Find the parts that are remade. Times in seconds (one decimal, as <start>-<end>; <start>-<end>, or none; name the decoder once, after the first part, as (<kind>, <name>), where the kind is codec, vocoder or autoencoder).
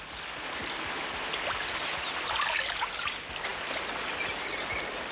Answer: none